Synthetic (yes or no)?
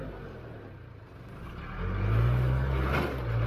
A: no